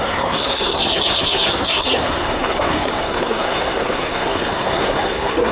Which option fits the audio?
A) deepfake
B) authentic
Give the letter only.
A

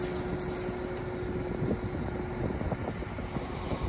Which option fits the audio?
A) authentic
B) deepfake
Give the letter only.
A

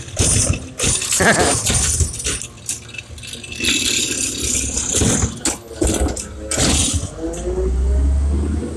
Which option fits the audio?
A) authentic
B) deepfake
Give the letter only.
A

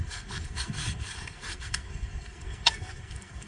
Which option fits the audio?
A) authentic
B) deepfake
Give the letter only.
B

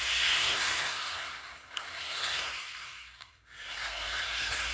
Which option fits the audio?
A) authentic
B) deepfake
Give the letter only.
B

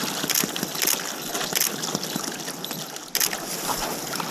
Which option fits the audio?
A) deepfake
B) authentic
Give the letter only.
B